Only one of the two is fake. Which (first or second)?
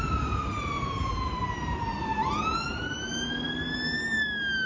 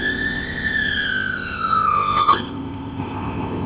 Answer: second